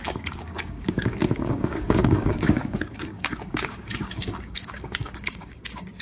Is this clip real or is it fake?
fake